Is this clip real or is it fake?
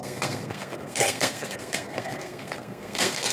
fake